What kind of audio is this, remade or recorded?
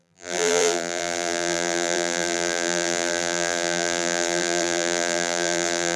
remade